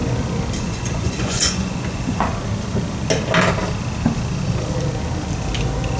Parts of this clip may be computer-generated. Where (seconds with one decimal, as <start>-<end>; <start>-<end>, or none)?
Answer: 0.6-2.3